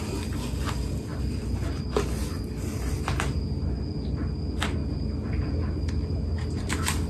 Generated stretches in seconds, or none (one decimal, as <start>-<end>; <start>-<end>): none